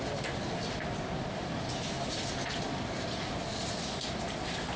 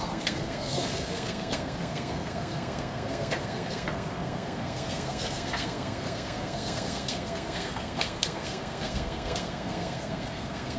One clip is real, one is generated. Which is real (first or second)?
first